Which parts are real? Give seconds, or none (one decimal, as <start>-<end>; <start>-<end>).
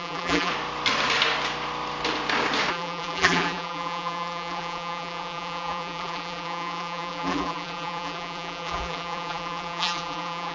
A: 0.5-2.7